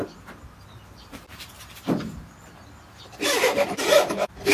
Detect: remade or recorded remade